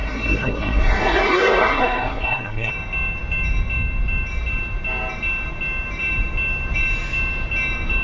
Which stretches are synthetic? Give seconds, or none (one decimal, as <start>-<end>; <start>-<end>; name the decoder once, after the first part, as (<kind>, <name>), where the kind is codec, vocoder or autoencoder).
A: 0.0-2.7 (codec, SNAC)